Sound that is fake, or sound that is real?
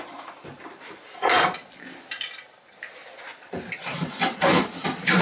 fake